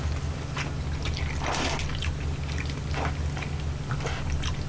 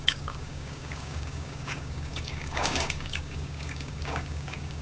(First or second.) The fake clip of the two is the second